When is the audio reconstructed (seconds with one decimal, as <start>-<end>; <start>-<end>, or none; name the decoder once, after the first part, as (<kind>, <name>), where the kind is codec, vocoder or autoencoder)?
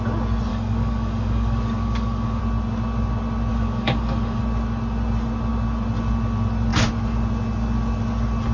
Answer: 0.5-2.4 (codec, DAC); 3.5-4.4